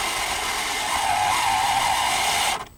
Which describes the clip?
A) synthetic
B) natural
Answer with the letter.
B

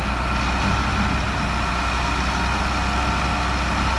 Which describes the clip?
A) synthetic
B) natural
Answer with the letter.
B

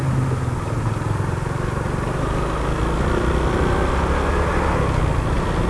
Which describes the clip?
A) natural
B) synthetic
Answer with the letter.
A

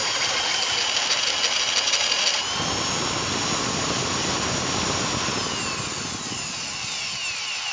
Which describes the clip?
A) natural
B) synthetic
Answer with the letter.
A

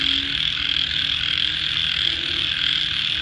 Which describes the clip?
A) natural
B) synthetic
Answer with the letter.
A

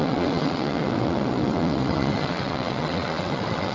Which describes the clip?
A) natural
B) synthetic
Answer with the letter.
B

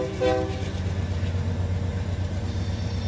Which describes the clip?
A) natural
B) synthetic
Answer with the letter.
A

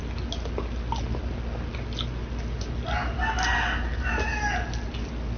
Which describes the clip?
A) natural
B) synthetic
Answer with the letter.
A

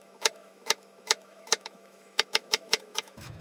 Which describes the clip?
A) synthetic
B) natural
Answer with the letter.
A